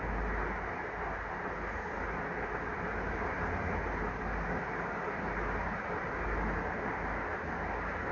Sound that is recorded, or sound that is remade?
recorded